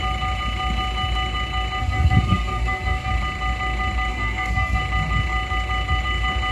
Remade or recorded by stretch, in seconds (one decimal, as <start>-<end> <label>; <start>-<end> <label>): 0.0-1.8 recorded; 1.8-3.1 remade; 3.1-4.1 recorded; 4.1-4.8 remade; 4.8-6.5 recorded